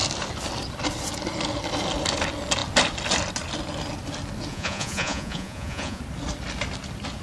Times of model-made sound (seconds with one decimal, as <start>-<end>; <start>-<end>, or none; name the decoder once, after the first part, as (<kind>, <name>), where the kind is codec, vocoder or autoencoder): 4.5-6.0 (vocoder, Vocos)